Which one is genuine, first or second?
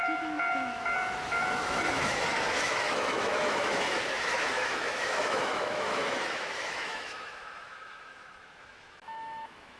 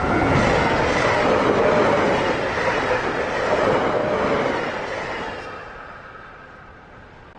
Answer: second